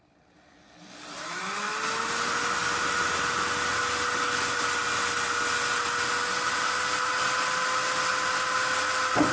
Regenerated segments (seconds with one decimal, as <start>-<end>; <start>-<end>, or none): none